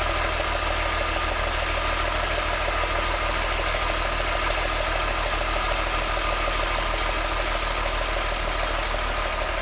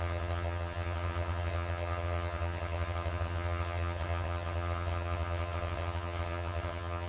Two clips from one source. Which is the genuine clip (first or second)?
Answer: first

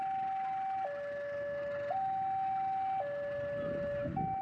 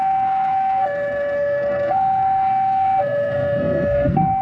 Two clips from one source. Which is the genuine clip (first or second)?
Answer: first